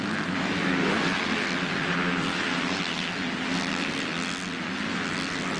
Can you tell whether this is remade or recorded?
recorded